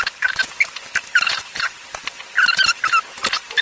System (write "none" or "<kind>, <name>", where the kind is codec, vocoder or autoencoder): none